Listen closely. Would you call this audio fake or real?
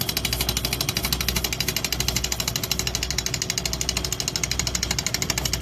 real